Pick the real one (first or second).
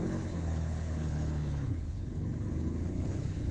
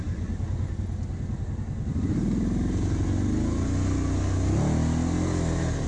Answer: second